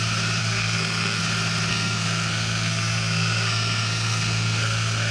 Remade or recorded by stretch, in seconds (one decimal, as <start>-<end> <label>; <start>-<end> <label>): 0.0-0.4 recorded; 0.4-1.2 remade; 1.2-1.7 recorded; 1.7-5.1 remade